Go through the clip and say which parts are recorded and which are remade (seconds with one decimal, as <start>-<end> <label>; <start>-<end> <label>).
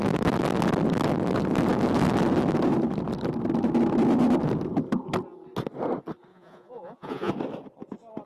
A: 0.0-6.3 recorded; 6.3-7.3 remade; 7.3-8.3 recorded